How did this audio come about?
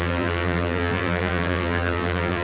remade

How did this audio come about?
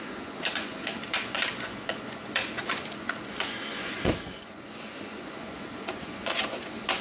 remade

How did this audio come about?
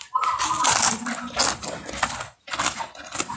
recorded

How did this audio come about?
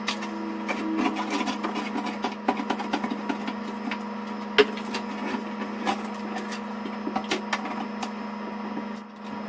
recorded